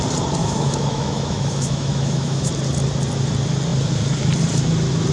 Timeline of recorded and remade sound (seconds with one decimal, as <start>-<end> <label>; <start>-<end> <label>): 0.0-0.4 recorded; 0.4-2.5 remade; 2.5-5.1 recorded